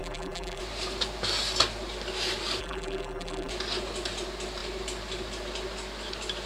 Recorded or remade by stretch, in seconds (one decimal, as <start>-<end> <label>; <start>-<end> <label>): 0.0-0.6 remade; 0.6-2.6 recorded; 2.6-3.5 remade; 3.5-6.5 recorded